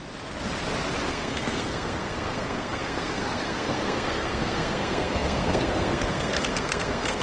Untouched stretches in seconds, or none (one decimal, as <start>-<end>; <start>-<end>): 0.0-1.1